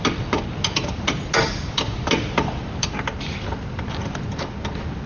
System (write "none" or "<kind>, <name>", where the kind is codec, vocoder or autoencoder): none